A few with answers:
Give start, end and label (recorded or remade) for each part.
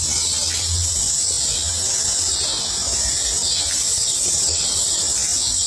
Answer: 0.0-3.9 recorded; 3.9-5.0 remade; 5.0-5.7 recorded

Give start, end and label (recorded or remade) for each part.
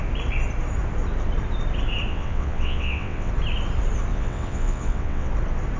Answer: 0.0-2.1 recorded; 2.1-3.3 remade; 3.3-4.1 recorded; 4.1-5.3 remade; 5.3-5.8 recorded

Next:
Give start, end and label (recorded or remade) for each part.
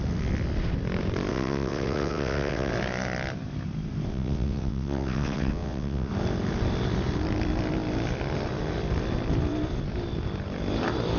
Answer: 0.0-1.3 recorded; 1.3-2.7 remade; 2.7-4.1 recorded; 4.1-6.1 remade; 6.1-11.2 recorded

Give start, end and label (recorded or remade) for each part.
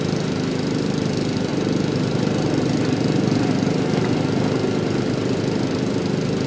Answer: 0.0-6.5 recorded